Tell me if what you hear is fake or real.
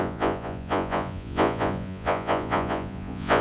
fake